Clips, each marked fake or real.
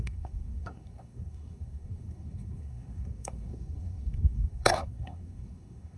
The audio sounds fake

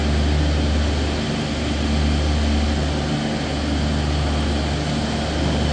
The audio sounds real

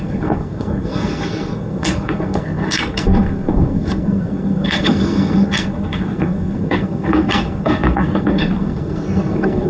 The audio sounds fake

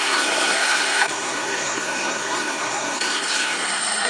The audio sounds fake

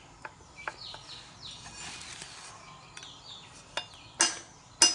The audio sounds real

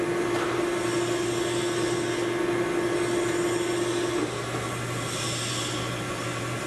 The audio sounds real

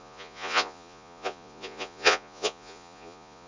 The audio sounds fake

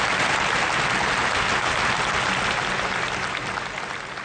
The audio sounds real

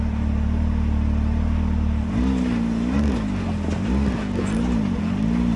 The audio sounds real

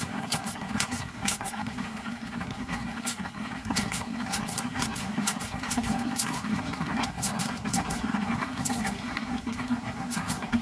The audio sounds fake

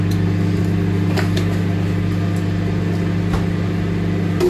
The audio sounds real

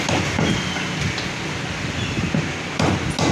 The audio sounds real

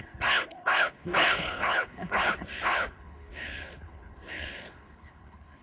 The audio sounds fake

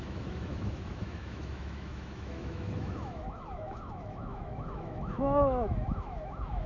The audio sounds fake